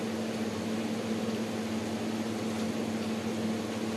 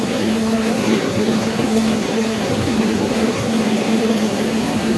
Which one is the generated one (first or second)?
second